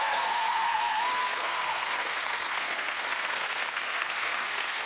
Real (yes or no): no